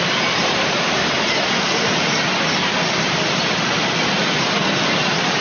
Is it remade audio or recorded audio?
recorded